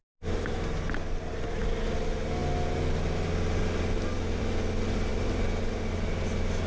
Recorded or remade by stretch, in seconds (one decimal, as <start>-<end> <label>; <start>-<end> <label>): 0.0-6.7 recorded